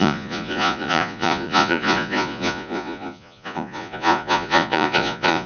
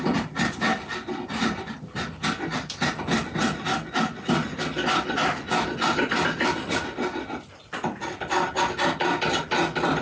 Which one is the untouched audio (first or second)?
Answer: second